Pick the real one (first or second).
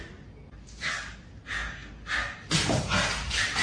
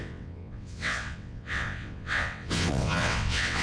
first